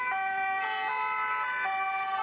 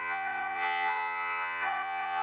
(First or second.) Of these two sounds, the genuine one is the first